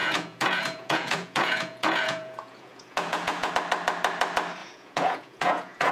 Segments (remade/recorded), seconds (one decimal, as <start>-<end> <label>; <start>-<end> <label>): 0.0-3.5 remade; 3.5-4.6 recorded; 4.6-5.9 remade

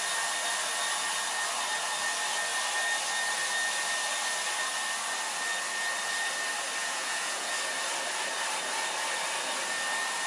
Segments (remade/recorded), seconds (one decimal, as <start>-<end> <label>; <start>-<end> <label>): 0.0-6.8 recorded; 6.8-7.5 remade; 7.5-10.3 recorded

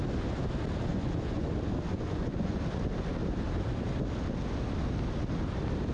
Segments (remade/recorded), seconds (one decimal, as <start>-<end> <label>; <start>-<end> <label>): 0.0-0.9 recorded; 0.9-1.5 remade; 1.5-1.9 recorded; 1.9-2.6 remade; 2.6-5.9 recorded

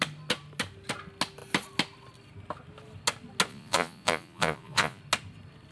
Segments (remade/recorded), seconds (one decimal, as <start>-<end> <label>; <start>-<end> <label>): 0.0-3.5 recorded; 3.5-5.0 remade; 5.0-5.7 recorded

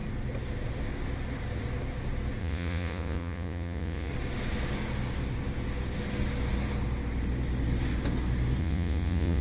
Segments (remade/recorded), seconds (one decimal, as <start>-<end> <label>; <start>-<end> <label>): 0.0-2.4 recorded; 2.4-4.1 remade; 4.1-8.6 recorded; 8.6-9.4 remade